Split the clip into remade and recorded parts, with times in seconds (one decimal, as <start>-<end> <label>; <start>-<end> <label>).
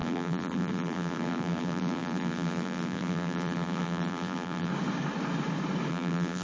0.0-4.7 remade; 4.7-5.9 recorded; 5.9-6.4 remade